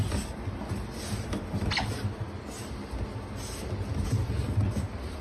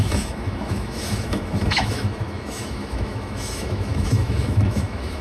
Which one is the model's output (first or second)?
second